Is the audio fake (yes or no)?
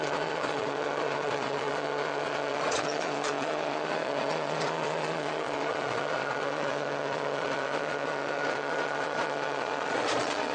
yes